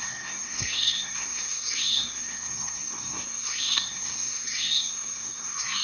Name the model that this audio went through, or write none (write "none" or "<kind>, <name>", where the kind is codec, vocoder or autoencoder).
codec, SNAC